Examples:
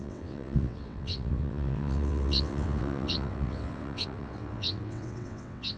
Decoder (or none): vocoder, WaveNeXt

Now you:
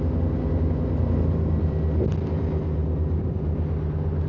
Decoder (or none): none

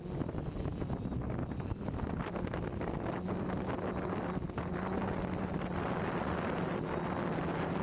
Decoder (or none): none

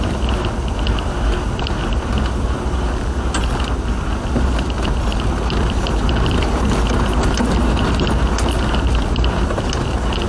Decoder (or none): none